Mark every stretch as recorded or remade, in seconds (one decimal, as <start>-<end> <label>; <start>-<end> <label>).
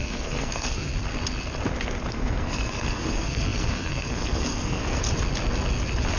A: 0.0-0.9 remade; 0.9-2.1 recorded; 2.1-5.0 remade; 5.0-6.2 recorded